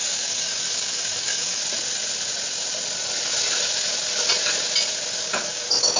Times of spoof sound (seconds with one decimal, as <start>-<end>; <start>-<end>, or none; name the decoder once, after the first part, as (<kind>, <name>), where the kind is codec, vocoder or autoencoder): 0.0-1.6 (codec, DAC); 5.2-6.0